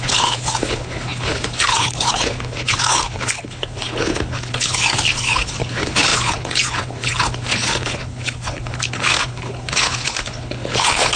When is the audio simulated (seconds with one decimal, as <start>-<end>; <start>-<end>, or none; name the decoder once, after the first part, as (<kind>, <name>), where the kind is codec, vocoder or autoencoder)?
0.0-11.2 (codec, HILCodec)